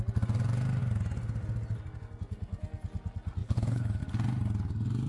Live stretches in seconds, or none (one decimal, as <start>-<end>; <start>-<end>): 0.0-3.4; 4.0-5.1